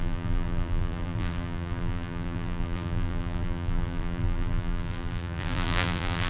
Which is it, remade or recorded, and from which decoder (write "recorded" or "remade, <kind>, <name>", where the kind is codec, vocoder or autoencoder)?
remade, vocoder, BigVGAN v2